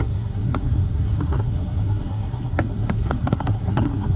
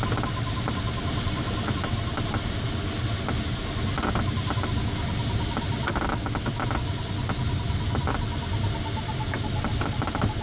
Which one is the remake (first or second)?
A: first